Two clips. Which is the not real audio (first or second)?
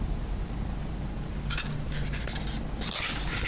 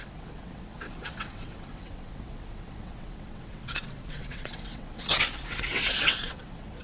second